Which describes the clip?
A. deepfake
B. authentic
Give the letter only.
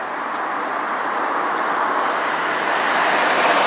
B